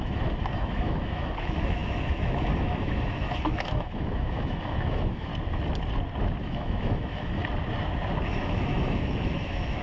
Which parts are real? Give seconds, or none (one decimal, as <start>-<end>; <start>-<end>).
5.3-6.4; 7.4-8.3